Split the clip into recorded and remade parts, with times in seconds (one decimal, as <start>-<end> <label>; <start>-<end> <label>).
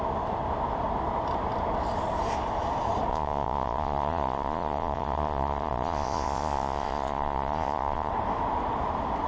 0.0-3.1 recorded; 3.1-8.1 remade; 8.1-9.3 recorded